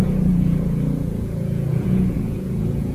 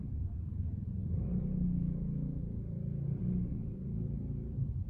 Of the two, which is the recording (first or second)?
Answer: second